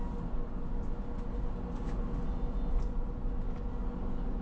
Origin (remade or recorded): recorded